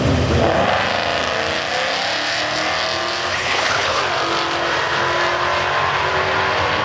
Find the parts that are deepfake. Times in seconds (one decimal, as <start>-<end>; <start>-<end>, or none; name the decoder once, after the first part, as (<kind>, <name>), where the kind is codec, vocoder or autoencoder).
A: 3.3-4.0 (codec, HILCodec)